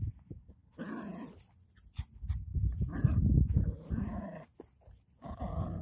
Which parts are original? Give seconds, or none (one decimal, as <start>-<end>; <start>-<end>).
0.0-5.8